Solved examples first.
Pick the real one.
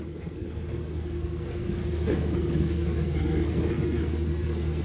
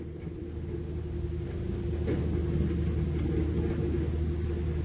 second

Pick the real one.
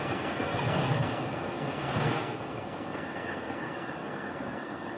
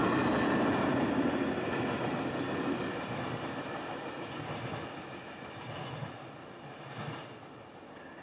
second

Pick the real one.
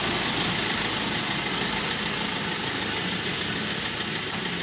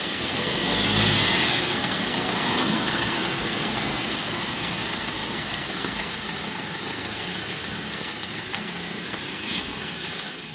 first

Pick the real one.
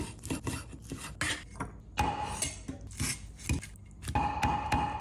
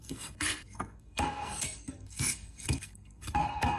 first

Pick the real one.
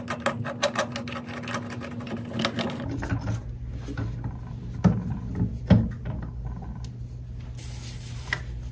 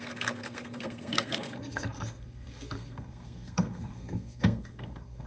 first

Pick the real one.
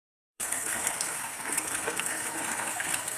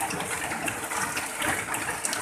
second